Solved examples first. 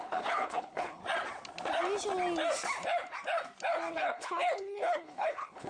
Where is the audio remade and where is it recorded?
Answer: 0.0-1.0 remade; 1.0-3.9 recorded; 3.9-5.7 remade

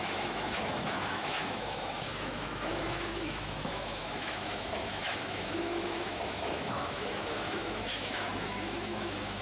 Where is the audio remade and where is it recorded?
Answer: 0.0-9.4 remade

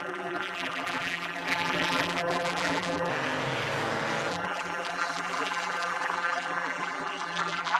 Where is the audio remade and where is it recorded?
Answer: 0.0-3.1 remade; 3.1-4.3 recorded; 4.3-7.8 remade

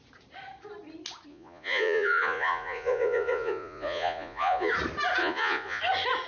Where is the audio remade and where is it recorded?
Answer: 0.0-1.3 recorded; 1.3-4.7 remade; 4.7-5.2 recorded; 5.2-5.8 remade; 5.8-6.3 recorded

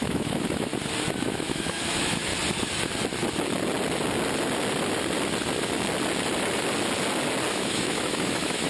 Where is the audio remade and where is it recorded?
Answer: 0.0-0.7 remade; 0.7-1.2 recorded; 1.2-2.3 remade; 2.3-7.5 recorded; 7.5-8.7 remade

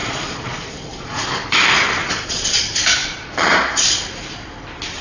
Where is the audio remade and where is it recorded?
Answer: 0.0-1.2 remade; 1.2-2.0 recorded; 2.0-2.6 remade; 2.6-3.0 recorded; 3.0-4.0 remade; 4.0-5.0 recorded

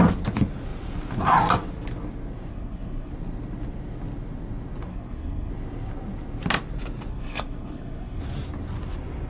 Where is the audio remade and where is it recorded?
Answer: 0.0-2.5 recorded; 2.5-3.1 remade; 3.1-4.9 recorded; 4.9-5.5 remade; 5.5-7.1 recorded; 7.1-8.2 remade; 8.2-9.3 recorded

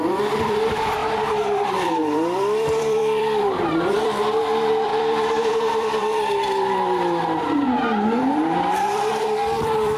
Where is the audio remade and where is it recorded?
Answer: 0.0-10.0 remade